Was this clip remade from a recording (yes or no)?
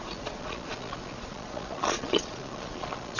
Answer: yes